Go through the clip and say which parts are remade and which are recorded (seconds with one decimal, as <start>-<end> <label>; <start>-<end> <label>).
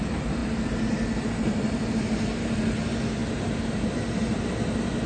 0.0-0.4 recorded; 0.4-2.8 remade; 2.8-3.2 recorded; 3.2-5.1 remade